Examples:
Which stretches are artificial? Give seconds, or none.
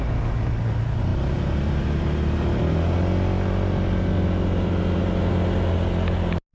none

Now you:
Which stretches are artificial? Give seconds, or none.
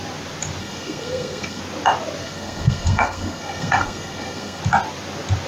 0.6-1.6 (codec, SNAC); 2.2-4.6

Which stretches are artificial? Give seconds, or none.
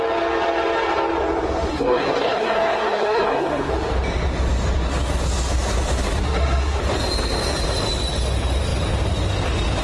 1.7-3.7 (codec, SNAC); 6.2-6.8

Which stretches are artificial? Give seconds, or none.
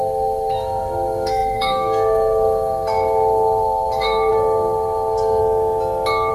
0.0-5.4 (codec, SNAC)